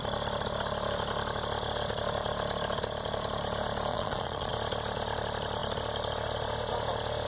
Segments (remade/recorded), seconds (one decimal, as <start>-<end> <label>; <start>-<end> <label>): 0.0-3.9 recorded; 3.9-4.5 remade; 4.5-7.3 recorded